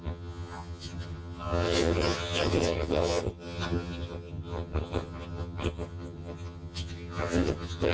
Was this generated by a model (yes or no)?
yes